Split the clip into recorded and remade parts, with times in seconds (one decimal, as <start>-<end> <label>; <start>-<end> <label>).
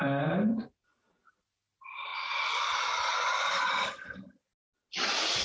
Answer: 0.0-5.4 recorded